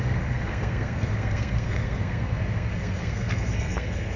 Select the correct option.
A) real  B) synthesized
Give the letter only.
B